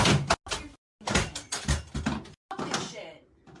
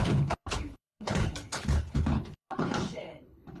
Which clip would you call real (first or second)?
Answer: first